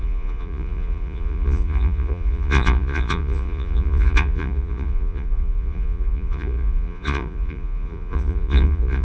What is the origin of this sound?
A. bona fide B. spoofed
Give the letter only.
B